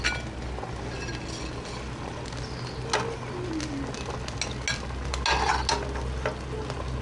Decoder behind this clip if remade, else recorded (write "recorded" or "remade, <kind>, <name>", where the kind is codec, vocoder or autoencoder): recorded